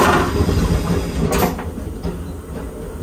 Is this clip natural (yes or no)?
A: yes